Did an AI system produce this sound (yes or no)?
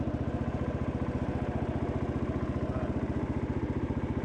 no